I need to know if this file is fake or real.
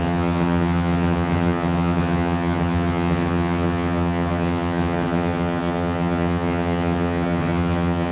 fake